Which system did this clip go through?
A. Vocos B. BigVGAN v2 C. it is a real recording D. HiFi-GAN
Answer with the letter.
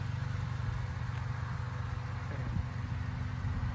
C